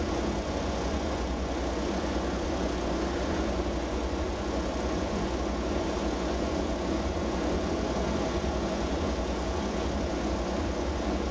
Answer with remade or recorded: remade